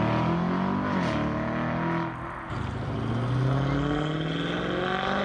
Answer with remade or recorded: recorded